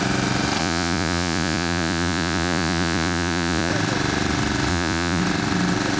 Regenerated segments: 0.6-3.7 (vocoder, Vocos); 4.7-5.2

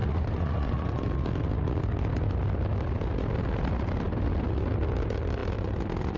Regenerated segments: 0.0-1.0 (vocoder, Vocos)

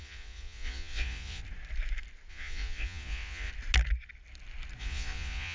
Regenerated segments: 0.0-1.4 (vocoder, Vocos); 2.3-3.5; 4.8-5.5

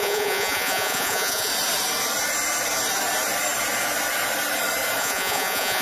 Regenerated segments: 0.0-1.5 (vocoder, Vocos); 5.0-5.8

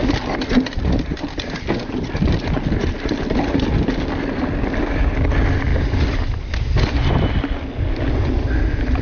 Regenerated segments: none